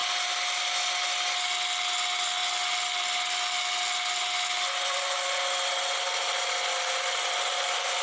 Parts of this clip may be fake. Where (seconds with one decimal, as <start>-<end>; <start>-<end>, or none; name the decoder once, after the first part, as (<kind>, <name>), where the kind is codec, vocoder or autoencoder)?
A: none